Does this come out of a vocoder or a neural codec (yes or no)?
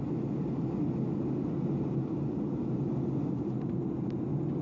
no